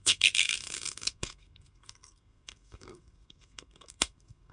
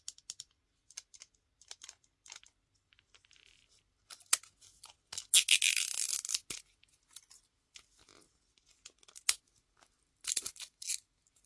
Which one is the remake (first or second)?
first